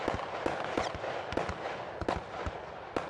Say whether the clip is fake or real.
real